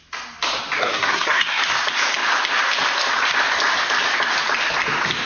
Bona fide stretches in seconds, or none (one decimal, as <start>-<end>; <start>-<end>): 0.0-0.8; 1.6-5.3